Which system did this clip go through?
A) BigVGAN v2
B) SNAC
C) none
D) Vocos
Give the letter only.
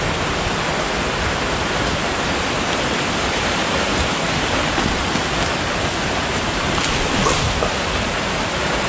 C